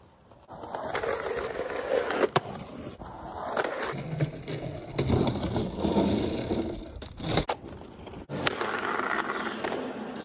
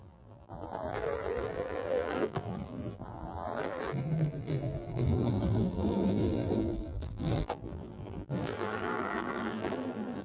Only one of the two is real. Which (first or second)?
first